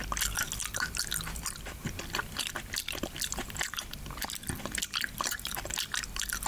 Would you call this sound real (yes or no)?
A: yes